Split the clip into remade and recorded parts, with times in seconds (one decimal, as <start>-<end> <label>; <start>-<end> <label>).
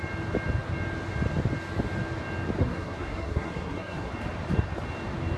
0.0-2.6 recorded; 2.6-4.1 remade; 4.1-5.4 recorded